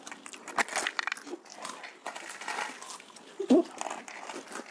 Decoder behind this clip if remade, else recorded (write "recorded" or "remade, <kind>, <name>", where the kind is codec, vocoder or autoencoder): recorded